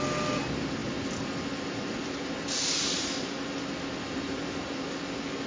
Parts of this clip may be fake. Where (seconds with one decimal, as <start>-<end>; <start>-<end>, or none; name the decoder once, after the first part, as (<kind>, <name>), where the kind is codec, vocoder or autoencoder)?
none